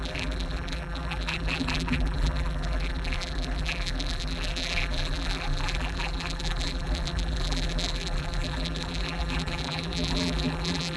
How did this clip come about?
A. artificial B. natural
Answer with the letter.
A